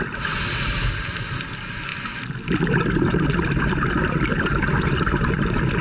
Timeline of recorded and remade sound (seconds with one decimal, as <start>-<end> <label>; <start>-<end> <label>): 0.0-4.3 recorded; 4.3-4.9 remade; 4.9-5.8 recorded